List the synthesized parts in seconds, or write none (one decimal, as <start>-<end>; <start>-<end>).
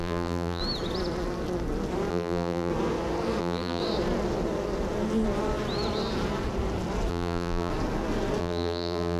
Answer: 0.0-0.6; 2.1-2.7; 3.4-3.8; 7.1-7.7; 8.4-9.2